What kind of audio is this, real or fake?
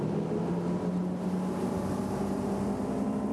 real